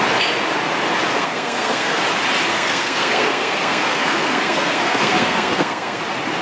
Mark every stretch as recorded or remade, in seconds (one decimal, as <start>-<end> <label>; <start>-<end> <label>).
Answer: 0.0-1.1 recorded; 1.1-2.0 remade; 2.0-2.5 recorded; 2.5-6.0 remade; 6.0-6.4 recorded